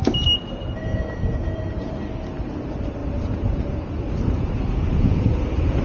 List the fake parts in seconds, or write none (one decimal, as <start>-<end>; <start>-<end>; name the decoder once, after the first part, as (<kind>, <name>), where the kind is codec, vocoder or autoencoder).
0.8-1.9 (vocoder, Vocos); 3.0-5.8